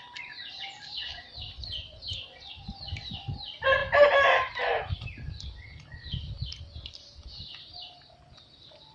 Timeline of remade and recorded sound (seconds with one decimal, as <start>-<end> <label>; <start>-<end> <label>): 0.0-8.9 recorded